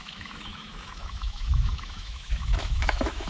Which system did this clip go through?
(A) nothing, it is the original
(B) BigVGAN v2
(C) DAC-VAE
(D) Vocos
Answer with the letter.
C